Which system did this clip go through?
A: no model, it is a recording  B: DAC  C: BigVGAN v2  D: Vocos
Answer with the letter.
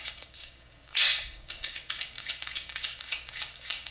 B